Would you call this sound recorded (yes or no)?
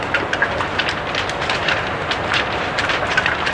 no